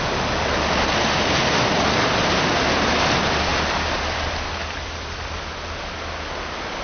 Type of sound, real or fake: real